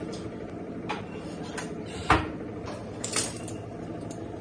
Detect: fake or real fake